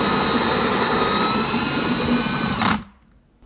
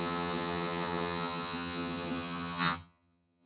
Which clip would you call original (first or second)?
first